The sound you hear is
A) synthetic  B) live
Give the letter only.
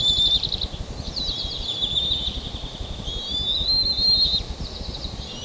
B